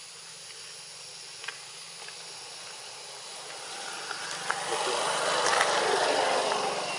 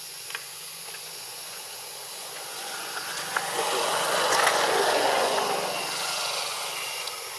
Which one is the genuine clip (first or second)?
first